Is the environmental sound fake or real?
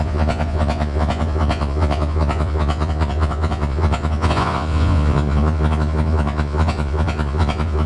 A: fake